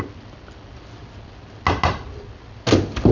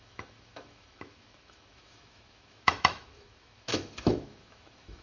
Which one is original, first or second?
first